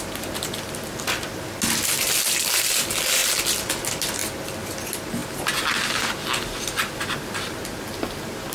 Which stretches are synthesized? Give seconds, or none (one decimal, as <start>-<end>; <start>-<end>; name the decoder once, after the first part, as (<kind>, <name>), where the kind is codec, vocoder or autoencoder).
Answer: none